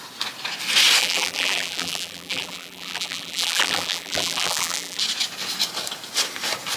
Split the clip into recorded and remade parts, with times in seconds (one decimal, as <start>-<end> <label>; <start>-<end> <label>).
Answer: 0.0-1.0 recorded; 1.0-5.0 remade; 5.0-6.8 recorded